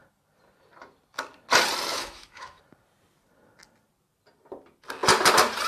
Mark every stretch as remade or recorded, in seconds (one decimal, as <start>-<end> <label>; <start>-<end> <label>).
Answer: 0.0-1.9 recorded; 1.9-2.6 remade; 2.6-5.7 recorded